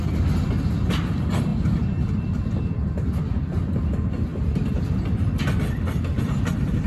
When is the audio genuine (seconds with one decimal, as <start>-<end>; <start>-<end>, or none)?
0.0-1.5; 3.2-4.3; 4.8-6.9